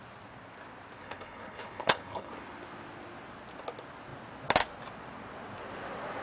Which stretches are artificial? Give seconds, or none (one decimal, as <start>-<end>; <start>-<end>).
1.0-2.3